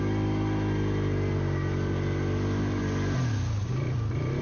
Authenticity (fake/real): real